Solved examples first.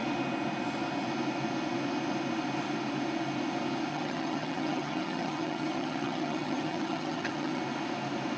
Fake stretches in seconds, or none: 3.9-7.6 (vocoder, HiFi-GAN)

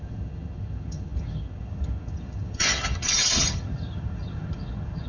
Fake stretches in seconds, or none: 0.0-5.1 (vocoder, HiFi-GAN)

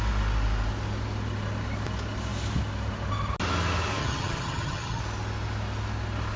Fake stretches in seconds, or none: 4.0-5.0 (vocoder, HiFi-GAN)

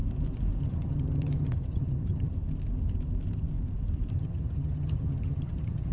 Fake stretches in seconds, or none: 0.6-2.3 (vocoder, HiFi-GAN); 4.1-5.9